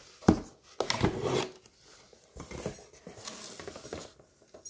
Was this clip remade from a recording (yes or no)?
no